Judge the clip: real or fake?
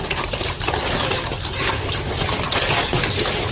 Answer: fake